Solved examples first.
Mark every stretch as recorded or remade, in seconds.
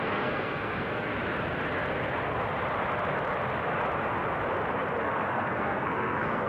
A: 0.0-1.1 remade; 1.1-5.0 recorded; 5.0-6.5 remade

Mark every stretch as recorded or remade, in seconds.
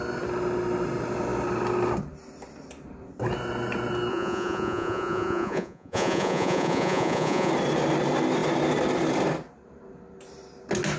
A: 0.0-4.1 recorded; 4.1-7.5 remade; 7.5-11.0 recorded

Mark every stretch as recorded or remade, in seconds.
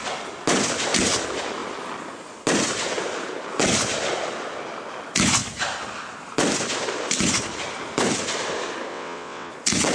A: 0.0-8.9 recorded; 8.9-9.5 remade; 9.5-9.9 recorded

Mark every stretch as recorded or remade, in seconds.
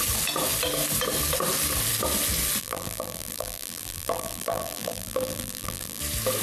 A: 0.0-2.6 recorded; 2.6-6.0 remade; 6.0-6.4 recorded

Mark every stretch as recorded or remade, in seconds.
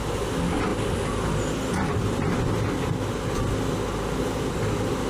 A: 0.0-5.1 recorded